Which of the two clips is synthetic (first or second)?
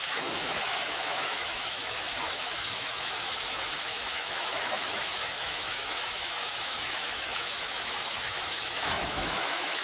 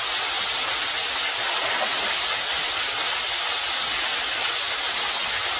first